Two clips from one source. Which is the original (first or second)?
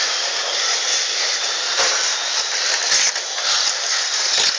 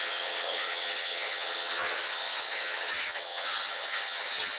first